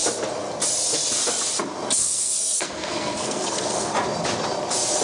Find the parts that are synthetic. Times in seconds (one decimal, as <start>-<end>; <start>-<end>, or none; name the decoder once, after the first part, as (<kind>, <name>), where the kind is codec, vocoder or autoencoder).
2.0-3.9 (codec, SNAC)